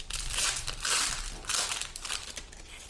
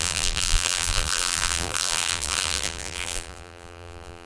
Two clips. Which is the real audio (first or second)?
first